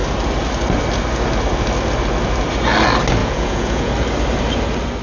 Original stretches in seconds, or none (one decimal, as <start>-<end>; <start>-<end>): 0.0-3.2; 3.9-5.0